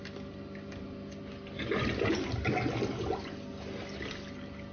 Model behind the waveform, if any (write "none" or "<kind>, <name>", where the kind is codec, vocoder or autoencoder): none